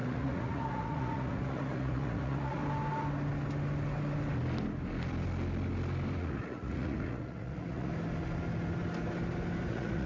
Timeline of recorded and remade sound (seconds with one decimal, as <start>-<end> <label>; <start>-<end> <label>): 0.0-2.6 remade; 2.6-6.2 recorded; 6.2-7.9 remade; 7.9-9.7 recorded; 9.7-10.1 remade